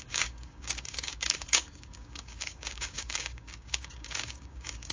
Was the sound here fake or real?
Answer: fake